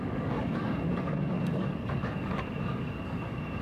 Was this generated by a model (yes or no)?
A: yes